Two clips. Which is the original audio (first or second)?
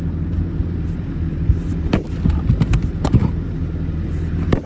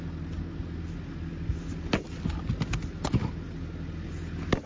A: second